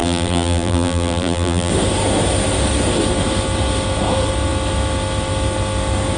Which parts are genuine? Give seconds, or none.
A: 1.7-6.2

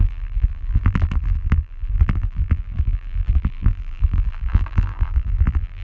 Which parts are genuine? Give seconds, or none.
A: none

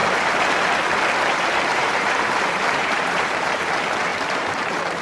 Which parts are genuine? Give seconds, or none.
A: 0.0-1.7; 3.6-4.1

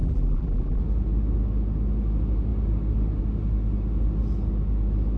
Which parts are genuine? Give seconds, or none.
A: 0.8-5.2